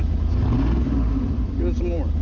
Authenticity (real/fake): real